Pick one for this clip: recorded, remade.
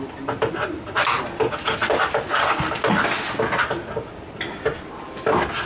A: recorded